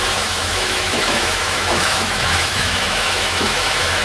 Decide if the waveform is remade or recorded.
remade